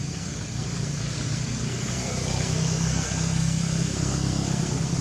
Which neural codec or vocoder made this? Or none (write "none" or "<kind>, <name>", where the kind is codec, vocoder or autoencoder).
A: codec, SNAC